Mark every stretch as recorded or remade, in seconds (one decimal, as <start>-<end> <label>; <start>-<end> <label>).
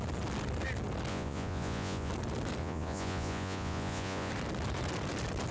0.0-1.1 recorded; 1.1-2.1 remade; 2.1-2.6 recorded; 2.6-4.3 remade; 4.3-5.5 recorded